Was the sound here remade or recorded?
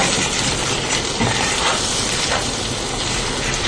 recorded